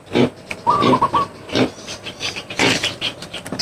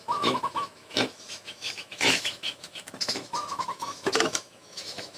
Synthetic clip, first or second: second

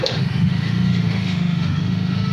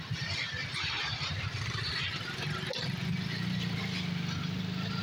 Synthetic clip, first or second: first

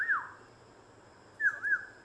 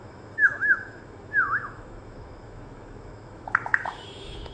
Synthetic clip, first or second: second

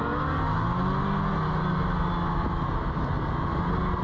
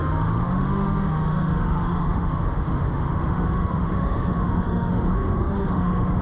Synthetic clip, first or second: second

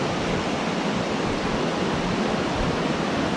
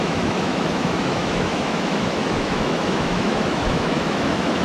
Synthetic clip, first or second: second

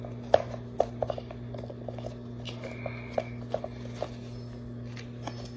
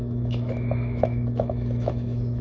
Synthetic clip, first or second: second